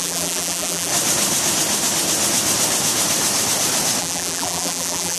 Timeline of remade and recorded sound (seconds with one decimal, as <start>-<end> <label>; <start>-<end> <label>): 0.0-0.9 remade; 0.9-4.0 recorded; 4.0-5.2 remade